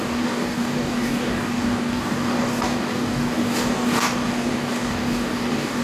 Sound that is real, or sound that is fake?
fake